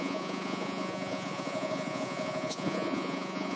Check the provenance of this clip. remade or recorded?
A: remade